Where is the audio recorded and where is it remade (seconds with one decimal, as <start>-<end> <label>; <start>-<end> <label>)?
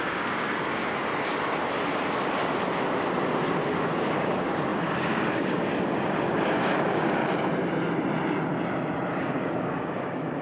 0.0-0.8 remade; 0.8-4.0 recorded; 4.0-7.2 remade; 7.2-9.2 recorded; 9.2-10.4 remade